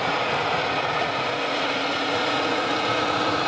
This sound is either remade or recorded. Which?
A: remade